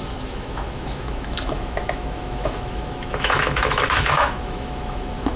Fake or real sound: fake